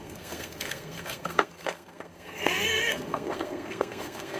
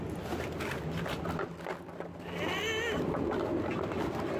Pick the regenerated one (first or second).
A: first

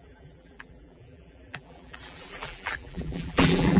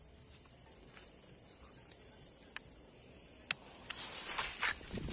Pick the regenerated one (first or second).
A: first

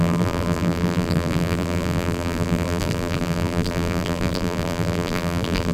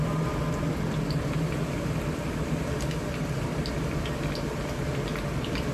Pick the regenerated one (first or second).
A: first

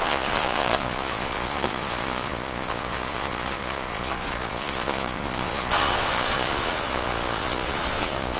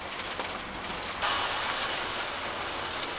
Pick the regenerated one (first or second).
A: first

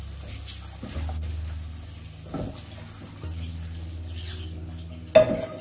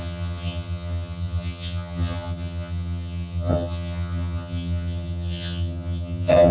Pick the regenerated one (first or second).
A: second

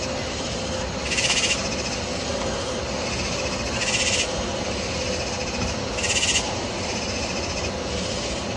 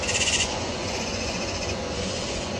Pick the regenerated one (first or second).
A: second